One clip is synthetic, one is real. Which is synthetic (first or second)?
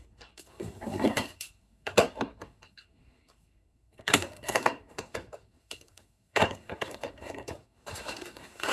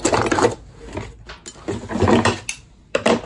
first